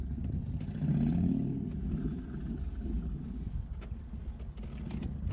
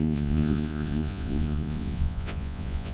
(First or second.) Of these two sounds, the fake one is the second